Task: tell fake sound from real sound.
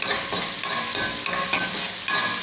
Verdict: real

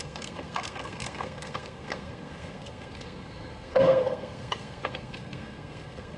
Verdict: fake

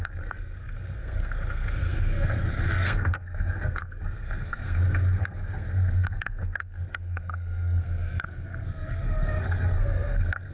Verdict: fake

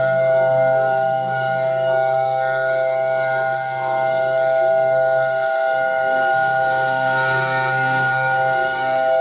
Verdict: fake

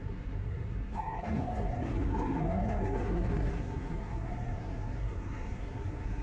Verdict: fake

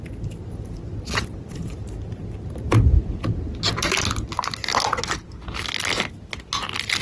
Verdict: real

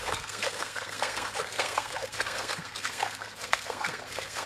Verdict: fake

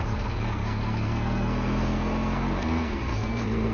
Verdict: fake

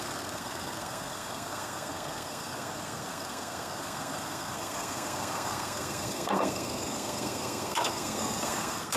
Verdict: fake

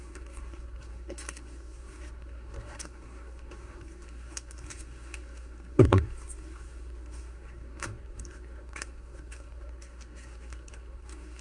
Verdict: fake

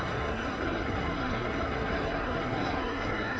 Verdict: fake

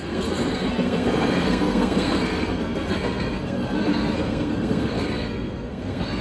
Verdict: fake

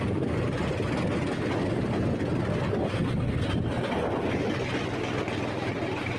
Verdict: real